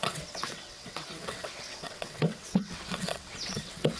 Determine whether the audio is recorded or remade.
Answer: remade